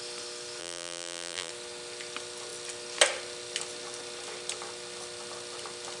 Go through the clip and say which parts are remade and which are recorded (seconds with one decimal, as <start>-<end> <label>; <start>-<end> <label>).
0.0-0.6 recorded; 0.6-1.5 remade; 1.5-6.0 recorded